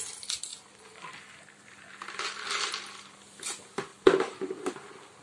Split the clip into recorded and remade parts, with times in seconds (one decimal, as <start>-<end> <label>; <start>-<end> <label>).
0.0-0.5 recorded; 0.5-2.8 remade; 2.8-3.9 recorded; 3.9-4.5 remade; 4.5-5.2 recorded